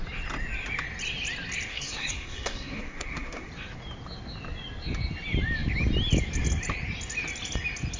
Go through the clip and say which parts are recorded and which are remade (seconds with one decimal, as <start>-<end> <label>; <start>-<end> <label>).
0.0-1.7 recorded; 1.7-3.5 remade; 3.5-8.0 recorded